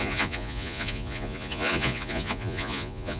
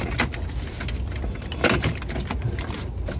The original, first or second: second